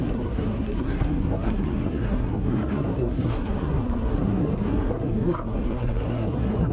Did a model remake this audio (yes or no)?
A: yes